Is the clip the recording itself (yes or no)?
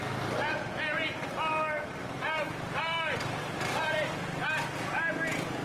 yes